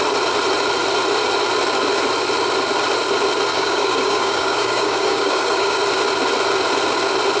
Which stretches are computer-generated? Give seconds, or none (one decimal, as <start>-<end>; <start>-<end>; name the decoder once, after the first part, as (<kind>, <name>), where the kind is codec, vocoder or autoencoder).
3.5-5.8 (codec, DAC)